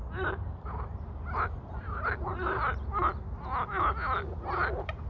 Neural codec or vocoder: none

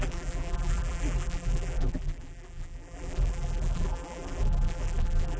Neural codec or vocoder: vocoder, BigVGAN v2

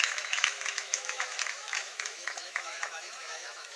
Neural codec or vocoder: autoencoder, DAC-VAE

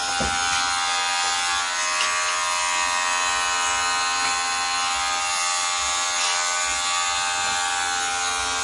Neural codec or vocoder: none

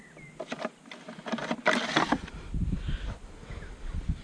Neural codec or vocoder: none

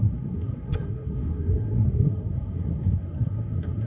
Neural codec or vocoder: codec, SNAC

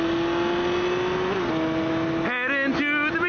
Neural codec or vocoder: none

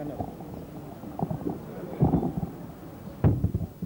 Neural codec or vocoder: none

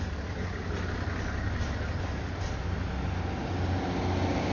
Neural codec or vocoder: none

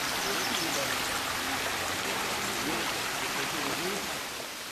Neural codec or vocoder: none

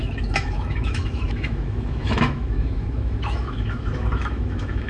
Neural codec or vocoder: autoencoder, DAC-VAE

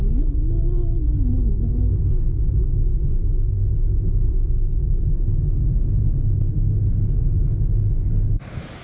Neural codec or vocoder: none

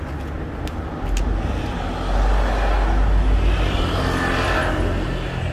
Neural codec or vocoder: none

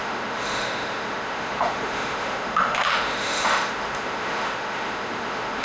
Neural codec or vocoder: autoencoder, DAC-VAE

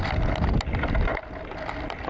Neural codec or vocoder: none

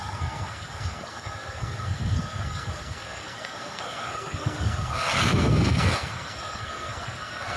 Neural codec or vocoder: codec, SNAC